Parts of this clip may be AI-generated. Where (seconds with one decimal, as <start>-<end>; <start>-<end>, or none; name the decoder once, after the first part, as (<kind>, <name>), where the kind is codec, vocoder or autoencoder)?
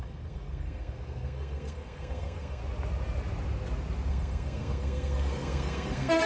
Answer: 0.0-2.6 (codec, SNAC); 4.1-6.3